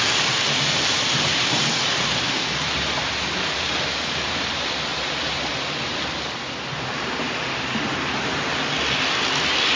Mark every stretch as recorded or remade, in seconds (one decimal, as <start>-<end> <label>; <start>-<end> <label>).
0.0-9.8 recorded